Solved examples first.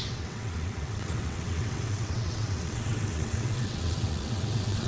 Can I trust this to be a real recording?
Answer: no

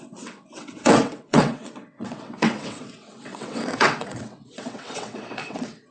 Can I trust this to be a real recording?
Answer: no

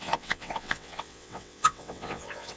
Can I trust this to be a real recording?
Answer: no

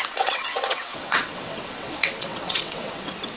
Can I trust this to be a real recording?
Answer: no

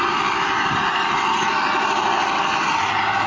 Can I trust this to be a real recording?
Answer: yes